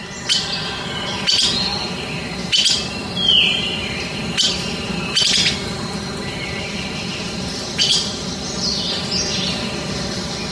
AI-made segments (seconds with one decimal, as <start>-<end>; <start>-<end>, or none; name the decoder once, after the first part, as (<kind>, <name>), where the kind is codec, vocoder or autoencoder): none